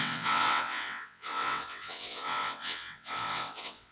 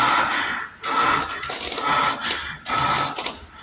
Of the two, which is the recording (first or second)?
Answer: second